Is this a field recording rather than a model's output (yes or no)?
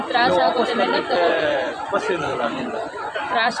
no